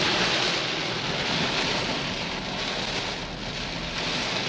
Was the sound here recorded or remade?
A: recorded